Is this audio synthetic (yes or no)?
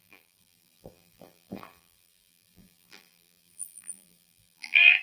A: yes